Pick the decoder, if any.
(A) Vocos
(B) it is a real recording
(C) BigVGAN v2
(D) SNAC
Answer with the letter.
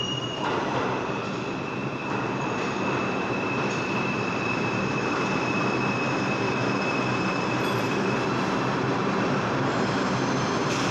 C